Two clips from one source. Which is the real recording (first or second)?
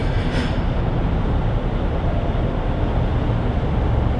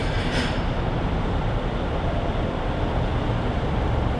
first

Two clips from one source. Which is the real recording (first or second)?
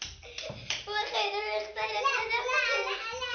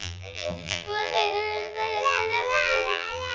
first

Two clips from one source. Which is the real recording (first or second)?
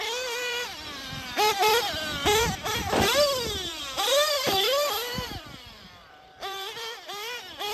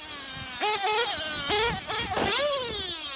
second